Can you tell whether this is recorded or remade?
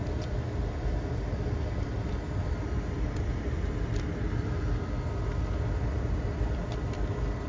recorded